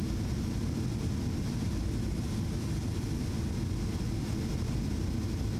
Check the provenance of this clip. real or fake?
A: real